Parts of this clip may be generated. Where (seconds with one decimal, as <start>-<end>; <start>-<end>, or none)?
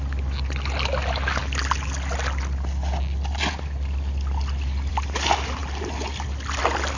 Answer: none